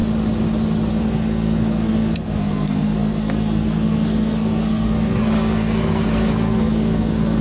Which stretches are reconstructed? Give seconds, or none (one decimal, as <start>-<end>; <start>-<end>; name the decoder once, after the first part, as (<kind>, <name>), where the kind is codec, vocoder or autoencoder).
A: 0.9-7.4 (codec, SNAC)